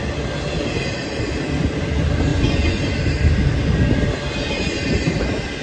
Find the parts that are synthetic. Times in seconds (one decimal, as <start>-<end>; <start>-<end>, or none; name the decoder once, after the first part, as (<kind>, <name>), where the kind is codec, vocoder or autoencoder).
2.3-2.8 (vocoder, Vocos)

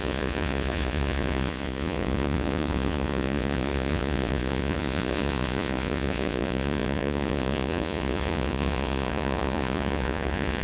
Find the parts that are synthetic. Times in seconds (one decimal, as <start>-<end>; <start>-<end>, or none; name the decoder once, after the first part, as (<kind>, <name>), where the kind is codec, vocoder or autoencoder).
0.0-10.6 (vocoder, Vocos)

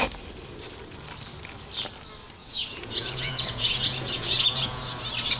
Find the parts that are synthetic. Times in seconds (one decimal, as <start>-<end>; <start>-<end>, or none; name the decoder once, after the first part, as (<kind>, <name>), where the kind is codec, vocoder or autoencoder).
2.4-4.8 (vocoder, Vocos)

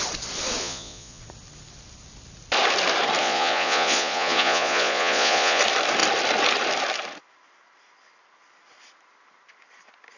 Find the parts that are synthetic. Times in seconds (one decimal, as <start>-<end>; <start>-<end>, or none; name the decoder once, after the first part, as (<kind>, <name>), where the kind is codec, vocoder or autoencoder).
0.6-1.2 (vocoder, Vocos); 3.2-5.6

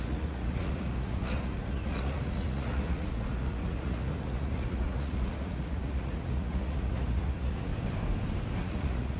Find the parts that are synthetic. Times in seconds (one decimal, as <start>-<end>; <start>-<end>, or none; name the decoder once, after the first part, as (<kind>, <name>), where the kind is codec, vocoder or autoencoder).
0.0-7.7 (vocoder, Vocos); 8.6-9.2

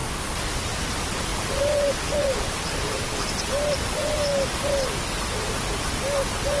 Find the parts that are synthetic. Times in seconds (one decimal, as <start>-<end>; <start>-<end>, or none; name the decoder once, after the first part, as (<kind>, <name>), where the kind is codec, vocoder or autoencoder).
none

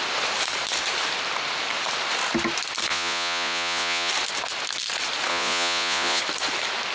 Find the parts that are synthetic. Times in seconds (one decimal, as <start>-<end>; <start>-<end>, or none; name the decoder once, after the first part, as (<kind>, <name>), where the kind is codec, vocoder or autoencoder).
2.9-4.1 (vocoder, Vocos); 5.3-6.2

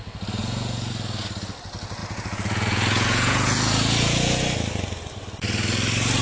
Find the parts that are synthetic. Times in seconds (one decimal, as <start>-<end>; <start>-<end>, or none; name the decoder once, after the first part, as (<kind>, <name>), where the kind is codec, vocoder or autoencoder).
0.4-0.9 (vocoder, Vocos); 2.0-4.4